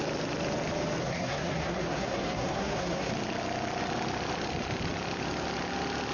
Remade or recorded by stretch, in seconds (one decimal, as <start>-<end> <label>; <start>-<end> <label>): 0.0-1.0 recorded; 1.0-3.1 remade; 3.1-6.1 recorded